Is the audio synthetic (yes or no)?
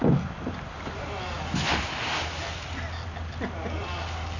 no